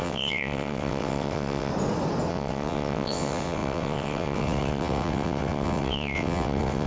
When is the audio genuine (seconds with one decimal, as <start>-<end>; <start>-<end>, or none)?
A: 1.7-2.3